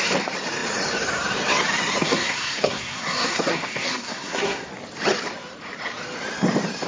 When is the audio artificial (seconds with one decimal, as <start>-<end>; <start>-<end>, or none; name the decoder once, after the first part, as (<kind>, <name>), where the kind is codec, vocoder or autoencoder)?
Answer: 2.0-4.7 (codec, SNAC)